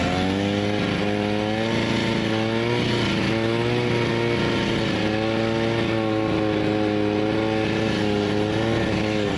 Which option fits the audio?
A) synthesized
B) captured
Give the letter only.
B